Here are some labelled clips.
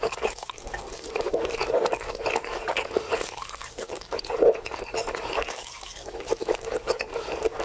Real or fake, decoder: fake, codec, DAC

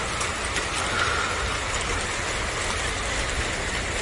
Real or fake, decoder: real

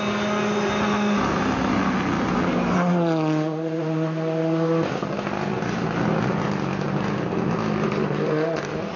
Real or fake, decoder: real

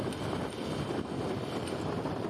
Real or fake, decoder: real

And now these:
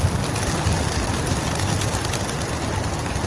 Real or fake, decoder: real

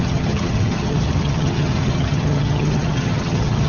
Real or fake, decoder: fake, vocoder, HiFi-GAN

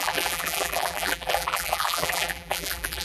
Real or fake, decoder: fake, vocoder, BigVGAN v2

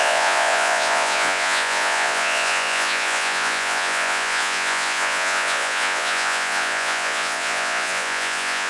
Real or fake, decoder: fake, vocoder, Vocos